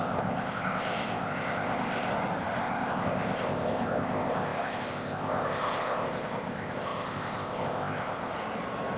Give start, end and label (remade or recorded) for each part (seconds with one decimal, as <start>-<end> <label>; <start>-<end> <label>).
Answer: 0.0-2.1 remade; 2.1-2.6 recorded; 2.6-8.3 remade; 8.3-9.0 recorded